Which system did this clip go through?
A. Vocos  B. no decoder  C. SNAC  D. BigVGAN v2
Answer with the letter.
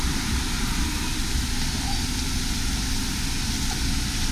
B